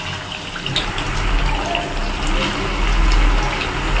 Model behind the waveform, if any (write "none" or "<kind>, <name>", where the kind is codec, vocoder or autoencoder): none